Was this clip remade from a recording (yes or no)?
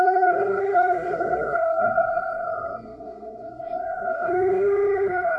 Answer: yes